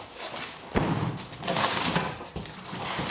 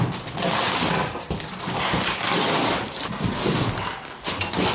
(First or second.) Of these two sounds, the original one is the second